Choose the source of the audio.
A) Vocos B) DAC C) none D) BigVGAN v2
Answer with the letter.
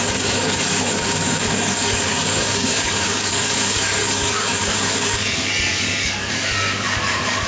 B